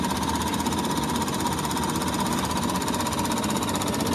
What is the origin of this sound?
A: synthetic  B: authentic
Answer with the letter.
B